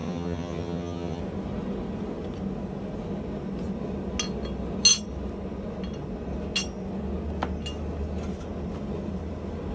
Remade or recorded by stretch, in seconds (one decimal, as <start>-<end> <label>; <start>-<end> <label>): 0.0-1.2 remade; 1.2-9.7 recorded